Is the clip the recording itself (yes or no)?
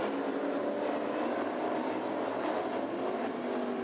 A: yes